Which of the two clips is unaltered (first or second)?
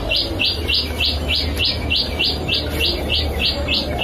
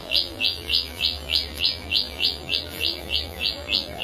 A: first